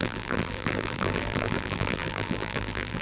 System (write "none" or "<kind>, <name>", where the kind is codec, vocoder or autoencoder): vocoder, BigVGAN v2